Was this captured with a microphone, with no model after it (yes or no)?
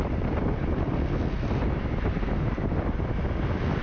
yes